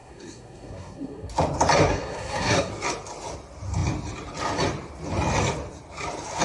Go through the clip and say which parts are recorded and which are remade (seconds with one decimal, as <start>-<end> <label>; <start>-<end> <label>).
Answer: 0.0-1.3 remade; 1.3-1.9 recorded; 1.9-2.7 remade; 2.7-6.4 recorded